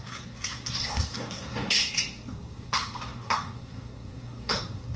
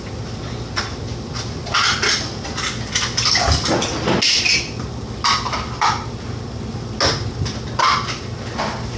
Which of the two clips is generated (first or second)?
first